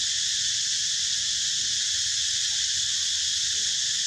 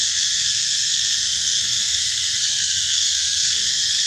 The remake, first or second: second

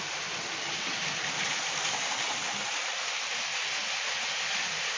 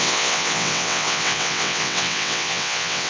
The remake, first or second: second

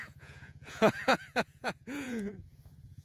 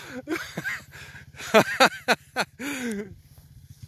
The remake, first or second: first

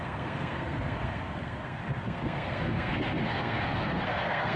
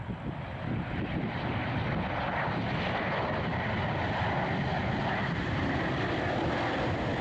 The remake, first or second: first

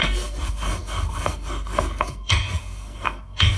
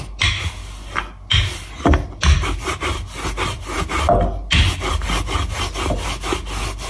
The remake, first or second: first